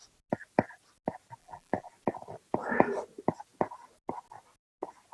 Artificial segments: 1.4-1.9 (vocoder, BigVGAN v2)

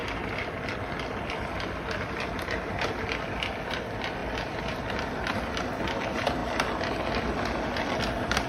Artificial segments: none

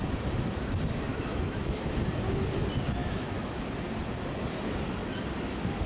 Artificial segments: 1.1-1.9 (autoencoder, DAC-VAE); 3.0-3.6

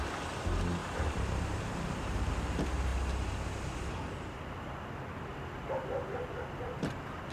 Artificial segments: 0.8-2.3 (vocoder, BigVGAN v2)

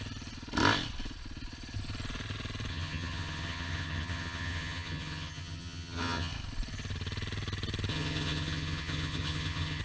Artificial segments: 2.7-6.3 (vocoder, HiFi-GAN); 7.9-9.8

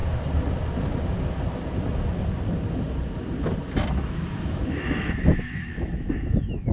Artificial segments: 4.0-6.7 (autoencoder, DAC-VAE)

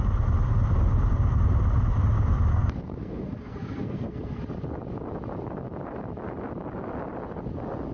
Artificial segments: 2.5-4.4 (codec, SNAC)

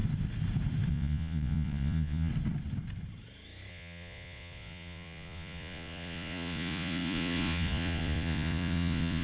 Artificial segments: 0.9-2.3 (vocoder, Vocos); 3.7-9.2